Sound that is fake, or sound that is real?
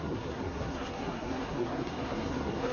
fake